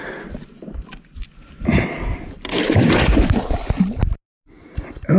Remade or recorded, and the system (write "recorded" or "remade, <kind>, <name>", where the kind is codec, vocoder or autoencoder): recorded